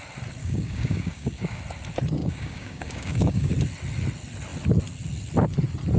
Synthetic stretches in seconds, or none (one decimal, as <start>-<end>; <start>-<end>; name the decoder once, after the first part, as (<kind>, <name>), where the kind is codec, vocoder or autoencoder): 0.4-1.6 (codec, DAC); 2.2-3.5